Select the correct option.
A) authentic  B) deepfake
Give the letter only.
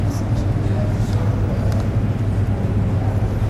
A